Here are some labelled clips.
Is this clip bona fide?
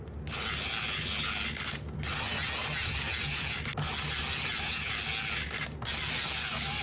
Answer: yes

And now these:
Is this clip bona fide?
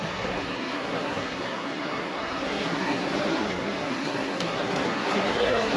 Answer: no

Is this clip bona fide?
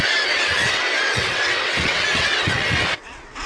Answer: no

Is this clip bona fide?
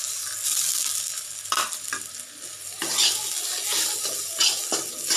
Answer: yes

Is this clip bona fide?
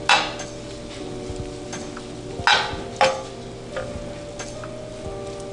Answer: yes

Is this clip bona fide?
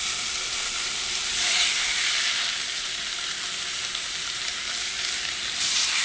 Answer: no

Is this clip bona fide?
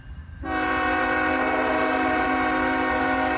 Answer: no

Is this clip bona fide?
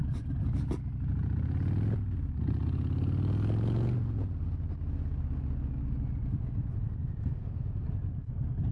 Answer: yes